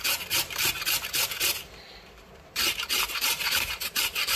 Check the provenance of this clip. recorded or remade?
remade